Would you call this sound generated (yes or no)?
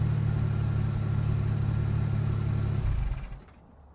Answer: no